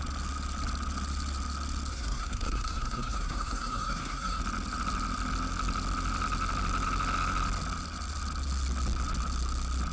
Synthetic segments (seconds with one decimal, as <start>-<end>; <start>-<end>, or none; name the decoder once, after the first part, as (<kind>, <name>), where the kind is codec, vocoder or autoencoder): 1.9-4.4 (codec, SNAC)